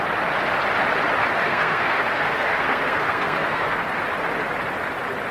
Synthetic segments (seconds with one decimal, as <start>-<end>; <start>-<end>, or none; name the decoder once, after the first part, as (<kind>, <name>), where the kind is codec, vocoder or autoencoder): 1.4-4.0 (codec, SNAC)